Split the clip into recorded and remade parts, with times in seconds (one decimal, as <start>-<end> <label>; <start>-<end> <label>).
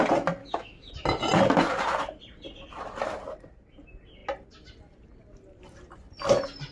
0.0-0.4 recorded; 0.4-0.9 remade; 0.9-6.7 recorded